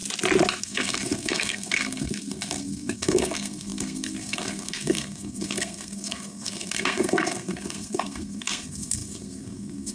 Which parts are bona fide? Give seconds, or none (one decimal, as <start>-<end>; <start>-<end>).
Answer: 0.0-0.6

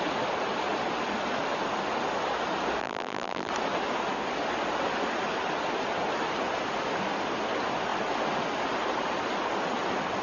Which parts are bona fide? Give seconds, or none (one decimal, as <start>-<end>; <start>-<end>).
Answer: 0.0-2.8; 3.5-10.2

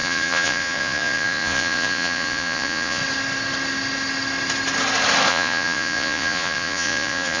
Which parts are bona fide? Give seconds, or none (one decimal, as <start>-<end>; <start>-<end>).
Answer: 3.0-5.3

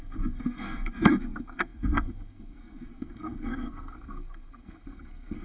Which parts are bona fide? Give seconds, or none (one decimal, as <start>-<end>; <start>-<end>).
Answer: none

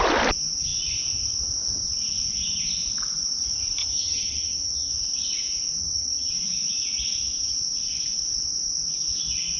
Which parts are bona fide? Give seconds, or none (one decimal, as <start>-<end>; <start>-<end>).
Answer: 0.0-3.8; 4.9-5.8; 6.3-9.6

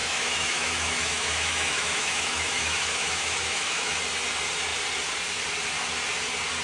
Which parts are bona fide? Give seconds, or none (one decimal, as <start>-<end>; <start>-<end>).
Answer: 4.0-6.6

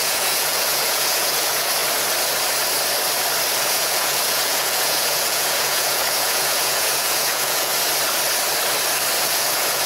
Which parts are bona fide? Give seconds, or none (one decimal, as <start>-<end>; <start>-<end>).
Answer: 1.8-3.6; 7.7-9.2